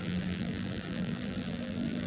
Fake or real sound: fake